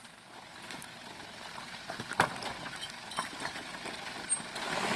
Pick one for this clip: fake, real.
real